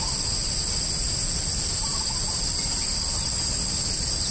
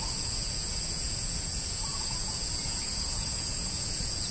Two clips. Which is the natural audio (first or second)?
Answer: first